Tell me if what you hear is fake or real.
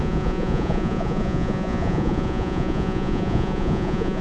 fake